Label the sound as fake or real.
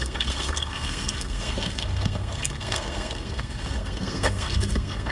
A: fake